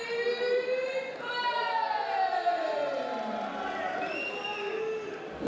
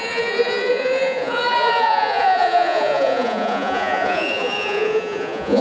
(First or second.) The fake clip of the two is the second